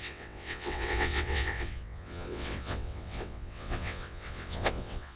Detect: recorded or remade remade